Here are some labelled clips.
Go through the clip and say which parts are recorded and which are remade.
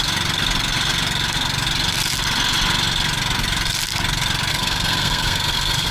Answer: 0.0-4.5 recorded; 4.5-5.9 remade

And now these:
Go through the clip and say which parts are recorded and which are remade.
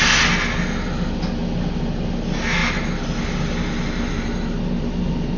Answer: 0.0-5.4 recorded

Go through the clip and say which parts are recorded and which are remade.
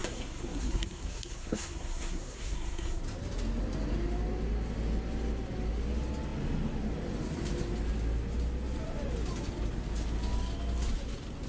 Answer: 0.0-3.0 remade; 3.0-11.5 recorded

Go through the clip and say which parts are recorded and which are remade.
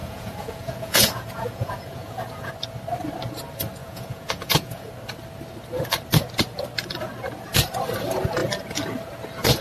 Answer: 0.0-2.5 remade; 2.5-3.8 recorded; 3.8-4.9 remade; 4.9-9.6 recorded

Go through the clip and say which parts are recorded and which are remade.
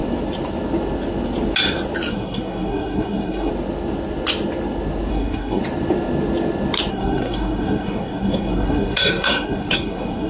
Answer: 0.0-2.1 recorded; 2.1-3.5 remade; 3.5-5.1 recorded; 5.1-5.6 remade; 5.6-6.9 recorded; 6.9-10.3 remade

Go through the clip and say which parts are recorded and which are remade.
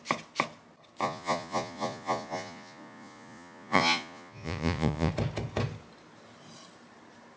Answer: 0.0-1.0 recorded; 1.0-5.1 remade; 5.1-7.4 recorded